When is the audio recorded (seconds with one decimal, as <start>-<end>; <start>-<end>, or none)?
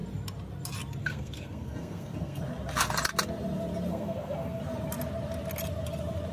0.0-1.0; 2.4-3.9; 4.6-6.3